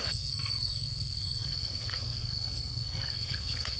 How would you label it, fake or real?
fake